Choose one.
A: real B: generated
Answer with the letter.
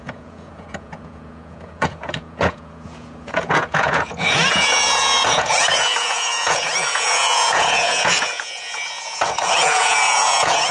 B